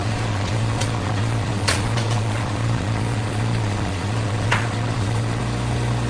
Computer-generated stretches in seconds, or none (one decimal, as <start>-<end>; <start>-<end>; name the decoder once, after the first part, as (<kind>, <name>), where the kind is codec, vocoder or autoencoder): 0.0-5.4 (vocoder, Vocos)